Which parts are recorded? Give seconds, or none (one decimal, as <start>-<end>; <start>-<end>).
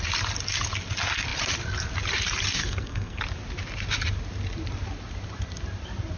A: 0.0-2.6; 3.2-6.2